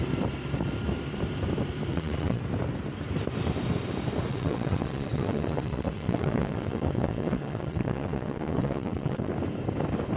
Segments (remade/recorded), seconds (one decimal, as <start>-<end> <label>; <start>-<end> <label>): 0.0-1.9 recorded; 1.9-2.4 remade; 2.4-4.3 recorded; 4.3-9.3 remade; 9.3-10.2 recorded